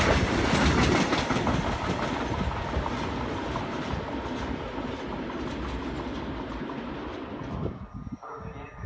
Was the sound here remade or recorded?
recorded